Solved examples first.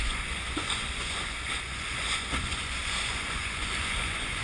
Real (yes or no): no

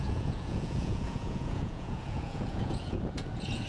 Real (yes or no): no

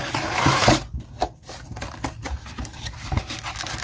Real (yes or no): yes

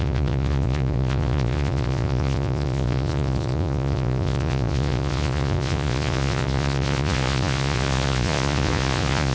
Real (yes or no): no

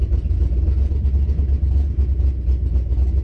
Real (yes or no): yes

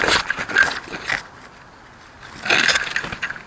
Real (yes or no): yes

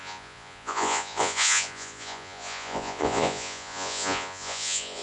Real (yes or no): no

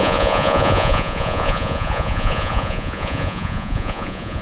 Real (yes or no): no